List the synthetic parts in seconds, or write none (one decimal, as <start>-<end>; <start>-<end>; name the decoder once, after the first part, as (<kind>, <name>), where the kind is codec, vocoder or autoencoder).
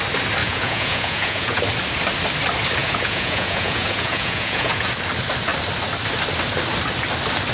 0.4-1.6 (vocoder, Vocos); 2.8-4.9